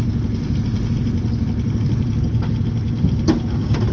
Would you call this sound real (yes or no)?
yes